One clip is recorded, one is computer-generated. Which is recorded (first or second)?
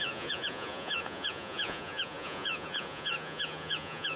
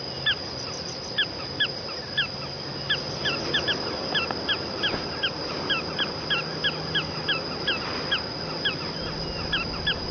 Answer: second